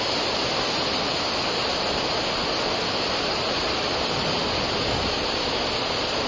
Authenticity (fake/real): real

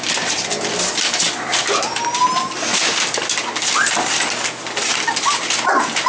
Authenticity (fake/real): real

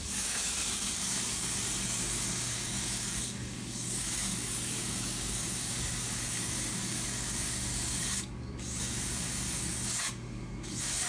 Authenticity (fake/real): fake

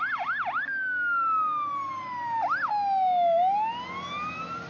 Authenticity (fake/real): real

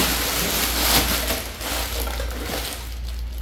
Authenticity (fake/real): real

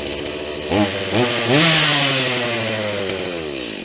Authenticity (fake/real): real